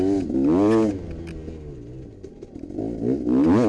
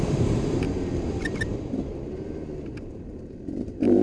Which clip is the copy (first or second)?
second